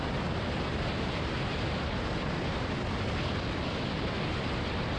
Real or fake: real